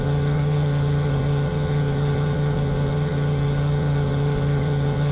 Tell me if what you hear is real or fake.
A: fake